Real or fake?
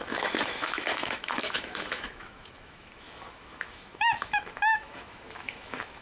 fake